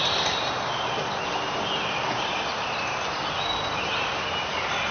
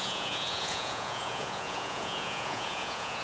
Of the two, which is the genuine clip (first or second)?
first